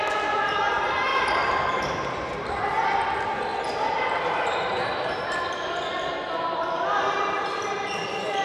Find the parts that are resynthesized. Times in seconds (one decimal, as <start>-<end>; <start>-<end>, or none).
1.1-1.7; 3.5-5.7